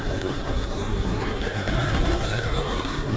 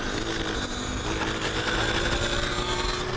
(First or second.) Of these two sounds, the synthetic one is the first